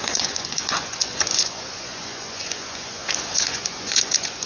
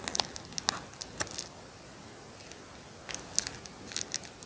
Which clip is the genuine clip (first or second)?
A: second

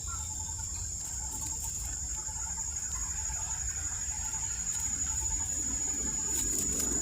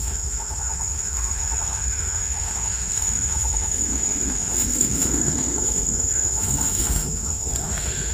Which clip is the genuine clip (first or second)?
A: first